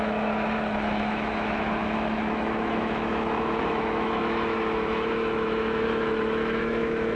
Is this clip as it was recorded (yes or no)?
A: no